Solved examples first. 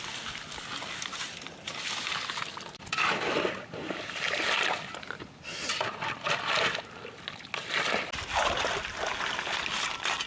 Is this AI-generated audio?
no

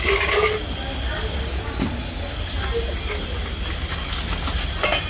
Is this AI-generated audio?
no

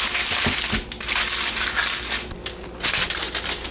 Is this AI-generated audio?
no